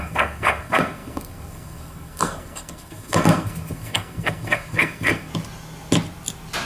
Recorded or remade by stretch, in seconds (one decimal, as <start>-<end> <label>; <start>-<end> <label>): 0.0-5.3 remade; 5.3-6.7 recorded